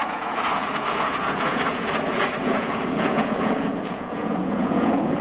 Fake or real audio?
fake